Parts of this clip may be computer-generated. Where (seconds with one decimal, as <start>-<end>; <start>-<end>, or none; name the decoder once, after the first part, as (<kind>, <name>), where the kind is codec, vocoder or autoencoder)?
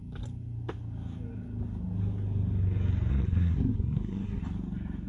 3.1-4.4 (codec, SNAC)